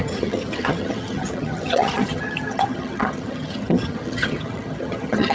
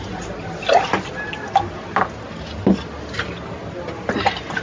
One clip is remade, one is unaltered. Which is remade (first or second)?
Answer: first